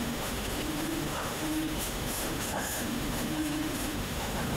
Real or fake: fake